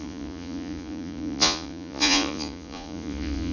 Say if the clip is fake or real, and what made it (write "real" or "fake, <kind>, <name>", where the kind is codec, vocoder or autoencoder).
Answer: fake, vocoder, Vocos